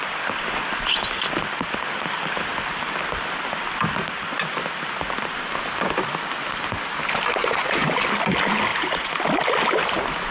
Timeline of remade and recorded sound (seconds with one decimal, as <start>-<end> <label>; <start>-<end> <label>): 0.0-7.4 recorded; 7.4-7.9 remade; 7.9-8.7 recorded; 8.7-9.2 remade; 9.2-10.3 recorded